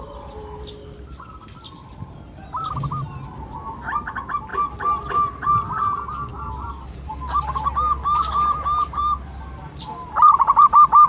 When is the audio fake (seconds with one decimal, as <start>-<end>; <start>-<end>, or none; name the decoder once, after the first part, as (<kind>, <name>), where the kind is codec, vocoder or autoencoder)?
4.5-5.0 (vocoder, BigVGAN v2); 6.3-7.1